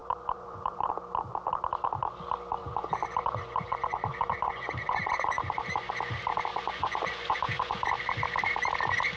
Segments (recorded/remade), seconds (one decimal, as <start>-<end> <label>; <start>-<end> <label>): 0.0-0.9 remade; 0.9-2.6 recorded; 2.6-5.9 remade; 5.9-6.5 recorded; 6.5-7.8 remade; 7.8-9.2 recorded